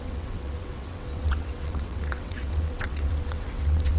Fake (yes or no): yes